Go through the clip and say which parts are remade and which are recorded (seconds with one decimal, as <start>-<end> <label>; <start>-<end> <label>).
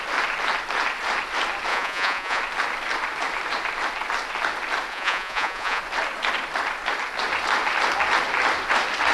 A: 0.0-1.7 recorded; 1.7-2.4 remade; 2.4-4.9 recorded; 4.9-5.8 remade; 5.8-9.1 recorded